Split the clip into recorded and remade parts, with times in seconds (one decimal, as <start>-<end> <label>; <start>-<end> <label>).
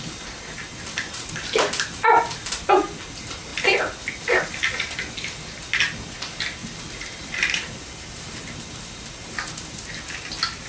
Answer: 0.0-10.7 recorded